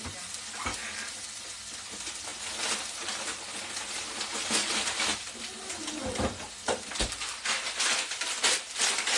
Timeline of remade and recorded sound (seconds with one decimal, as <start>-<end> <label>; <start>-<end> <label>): 0.0-9.2 recorded